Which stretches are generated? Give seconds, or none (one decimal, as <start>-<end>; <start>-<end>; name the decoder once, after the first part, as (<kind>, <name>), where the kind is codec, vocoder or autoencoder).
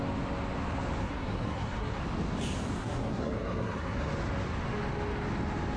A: 1.0-2.0 (codec, SNAC); 2.8-4.1